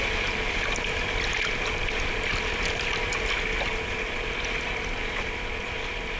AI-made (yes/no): no